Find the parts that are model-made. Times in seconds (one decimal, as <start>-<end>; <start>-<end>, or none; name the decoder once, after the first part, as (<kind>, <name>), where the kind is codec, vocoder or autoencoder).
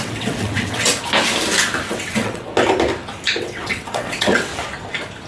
0.0-0.9 (vocoder, WaveNeXt); 1.9-2.5; 3.4-4.5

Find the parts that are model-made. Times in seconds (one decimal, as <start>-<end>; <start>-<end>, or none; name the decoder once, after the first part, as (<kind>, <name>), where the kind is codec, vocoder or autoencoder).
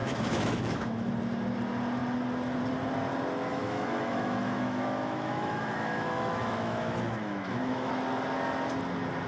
0.0-1.1 (autoencoder, DAC-VAE); 3.5-7.9